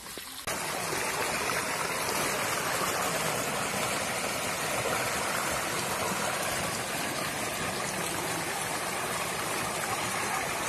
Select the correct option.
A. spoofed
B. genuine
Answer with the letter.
B